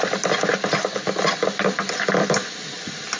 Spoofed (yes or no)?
no